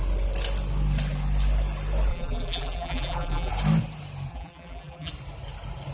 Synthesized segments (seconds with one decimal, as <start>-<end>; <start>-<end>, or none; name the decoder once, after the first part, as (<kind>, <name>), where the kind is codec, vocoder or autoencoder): 2.1-3.5 (vocoder, BigVGAN v2); 4.3-5.1